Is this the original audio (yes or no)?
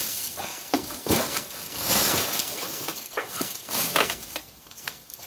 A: no